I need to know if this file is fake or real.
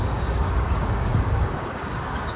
fake